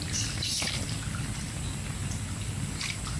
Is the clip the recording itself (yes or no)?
no